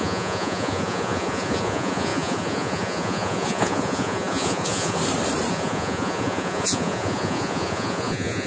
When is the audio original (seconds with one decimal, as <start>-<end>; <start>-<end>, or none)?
5.0-5.5